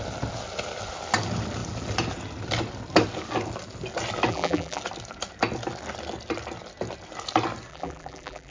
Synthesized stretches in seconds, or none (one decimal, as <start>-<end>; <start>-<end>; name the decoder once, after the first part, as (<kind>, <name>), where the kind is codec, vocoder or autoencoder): 4.3-4.8 (vocoder, BigVGAN v2); 7.7-8.5